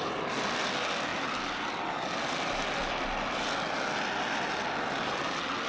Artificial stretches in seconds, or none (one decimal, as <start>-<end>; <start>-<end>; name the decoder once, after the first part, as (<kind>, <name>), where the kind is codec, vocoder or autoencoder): none